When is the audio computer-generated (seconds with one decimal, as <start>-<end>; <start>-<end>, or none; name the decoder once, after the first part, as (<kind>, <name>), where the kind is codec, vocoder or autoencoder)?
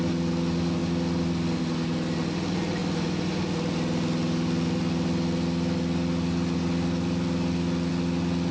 none